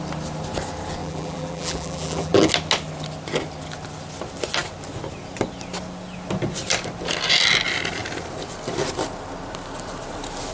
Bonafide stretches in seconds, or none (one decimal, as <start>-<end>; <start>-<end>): 0.0-1.0; 2.5-10.5